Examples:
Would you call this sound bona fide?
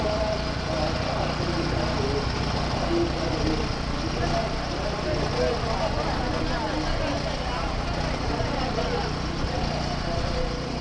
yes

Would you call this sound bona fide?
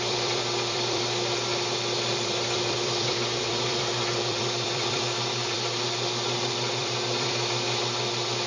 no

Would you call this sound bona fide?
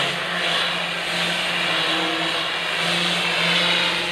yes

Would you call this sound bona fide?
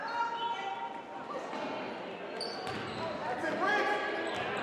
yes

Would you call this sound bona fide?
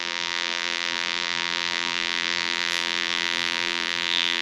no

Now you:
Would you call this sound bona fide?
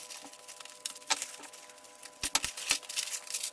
yes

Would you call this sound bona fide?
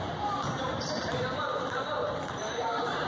no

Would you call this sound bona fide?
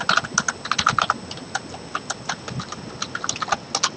yes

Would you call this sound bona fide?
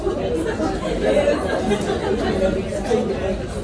yes